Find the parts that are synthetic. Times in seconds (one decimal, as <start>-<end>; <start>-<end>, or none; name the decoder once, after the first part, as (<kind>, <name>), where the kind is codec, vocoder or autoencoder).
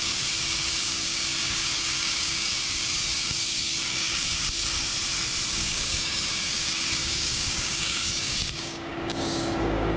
0.0-4.9 (codec, DAC); 5.5-10.0